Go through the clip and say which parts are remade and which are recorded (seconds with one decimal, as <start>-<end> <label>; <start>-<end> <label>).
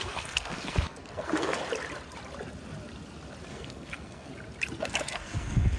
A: 0.0-1.6 remade; 1.6-3.5 recorded; 3.5-4.3 remade; 4.3-4.8 recorded; 4.8-5.8 remade